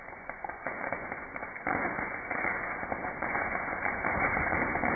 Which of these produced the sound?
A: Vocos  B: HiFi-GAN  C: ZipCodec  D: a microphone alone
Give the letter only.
A